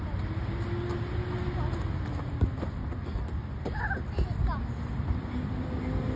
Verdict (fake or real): real